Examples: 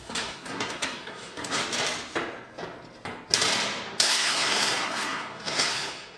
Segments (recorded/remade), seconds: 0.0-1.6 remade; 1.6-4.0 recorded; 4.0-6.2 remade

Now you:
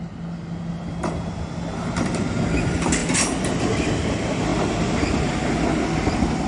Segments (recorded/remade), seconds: 0.0-6.5 recorded